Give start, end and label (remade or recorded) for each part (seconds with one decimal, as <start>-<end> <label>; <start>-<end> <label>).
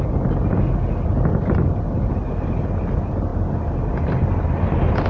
0.0-5.1 recorded